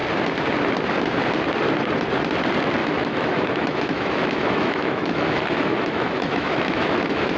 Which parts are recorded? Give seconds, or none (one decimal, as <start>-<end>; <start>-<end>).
0.0-2.8